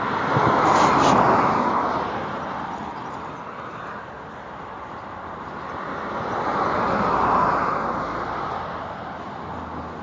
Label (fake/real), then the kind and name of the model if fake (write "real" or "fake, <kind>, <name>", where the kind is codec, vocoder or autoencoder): real